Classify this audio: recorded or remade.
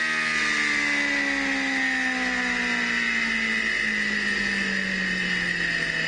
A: recorded